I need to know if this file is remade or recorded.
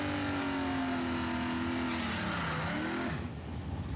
recorded